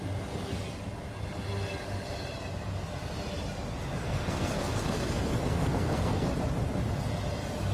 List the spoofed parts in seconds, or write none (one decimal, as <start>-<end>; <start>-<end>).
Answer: 4.0-6.3